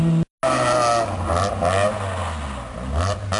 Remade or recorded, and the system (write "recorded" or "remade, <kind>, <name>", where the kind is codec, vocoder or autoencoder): recorded